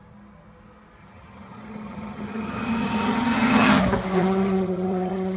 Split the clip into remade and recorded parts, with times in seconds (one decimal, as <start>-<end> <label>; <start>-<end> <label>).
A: 0.0-1.0 recorded; 1.0-3.8 remade; 3.8-4.2 recorded; 4.2-5.4 remade

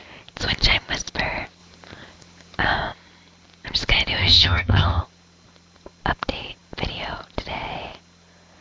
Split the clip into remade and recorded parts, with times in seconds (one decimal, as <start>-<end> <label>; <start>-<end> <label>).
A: 0.0-4.2 recorded; 4.2-5.0 remade; 5.0-8.6 recorded

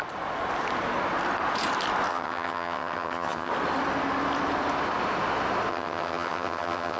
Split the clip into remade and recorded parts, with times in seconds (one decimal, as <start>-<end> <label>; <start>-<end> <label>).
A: 0.0-2.1 recorded; 2.1-3.5 remade; 3.5-5.7 recorded; 5.7-7.0 remade

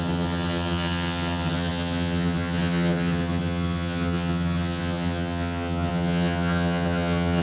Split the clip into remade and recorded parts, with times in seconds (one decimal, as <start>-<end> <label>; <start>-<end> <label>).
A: 0.0-7.4 remade

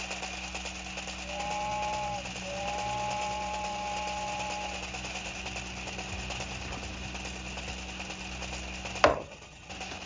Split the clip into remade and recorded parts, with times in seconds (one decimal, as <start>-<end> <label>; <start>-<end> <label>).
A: 0.0-9.1 recorded; 9.1-9.7 remade; 9.7-10.1 recorded